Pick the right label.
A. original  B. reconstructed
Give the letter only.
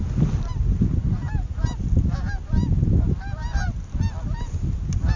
A